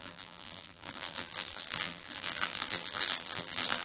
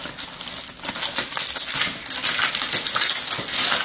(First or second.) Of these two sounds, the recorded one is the second